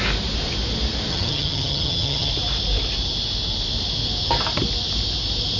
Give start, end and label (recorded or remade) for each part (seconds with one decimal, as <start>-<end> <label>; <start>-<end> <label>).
0.0-1.1 recorded; 1.1-2.3 remade; 2.3-5.6 recorded